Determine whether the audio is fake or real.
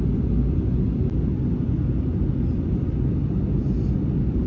real